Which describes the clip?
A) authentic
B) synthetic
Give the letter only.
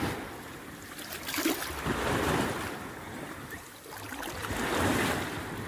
A